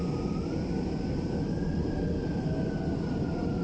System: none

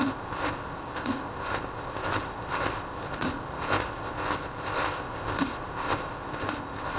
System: codec, ZipCodec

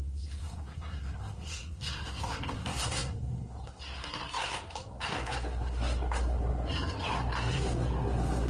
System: codec, SNAC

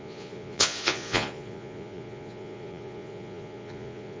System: vocoder, Vocos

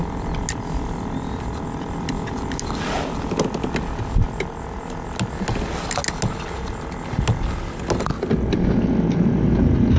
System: none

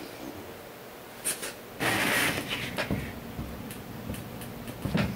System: none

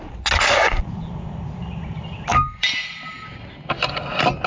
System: none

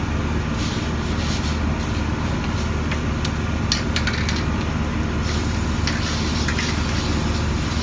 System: none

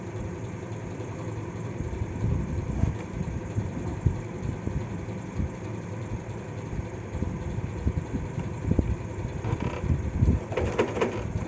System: vocoder, BigVGAN v2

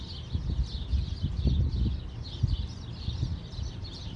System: none